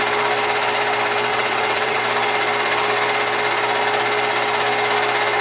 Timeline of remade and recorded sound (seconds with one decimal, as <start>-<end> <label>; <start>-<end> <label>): 0.0-1.3 recorded; 1.3-2.0 remade; 2.0-5.4 recorded